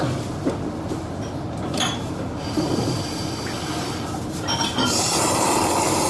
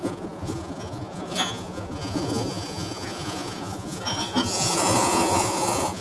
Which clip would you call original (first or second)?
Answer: first